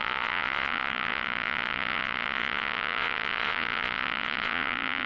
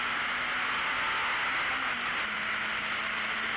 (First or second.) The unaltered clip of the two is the second